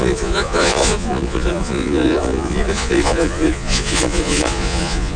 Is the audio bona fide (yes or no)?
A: no